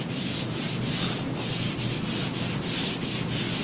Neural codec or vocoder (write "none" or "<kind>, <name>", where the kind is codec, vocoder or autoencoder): none